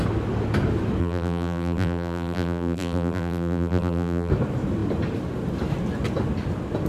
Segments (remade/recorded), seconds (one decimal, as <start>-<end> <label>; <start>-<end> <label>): 0.0-1.0 recorded; 1.0-4.3 remade; 4.3-6.9 recorded